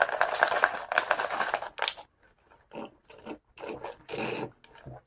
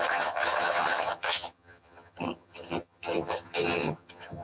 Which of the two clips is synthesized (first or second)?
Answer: second